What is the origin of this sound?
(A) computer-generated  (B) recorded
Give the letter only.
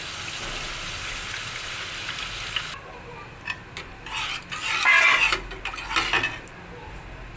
B